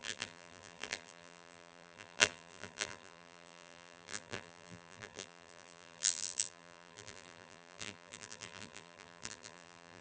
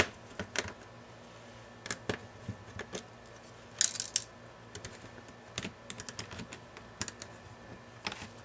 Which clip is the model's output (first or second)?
first